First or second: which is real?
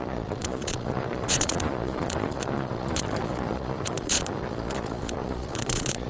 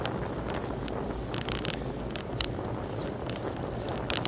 second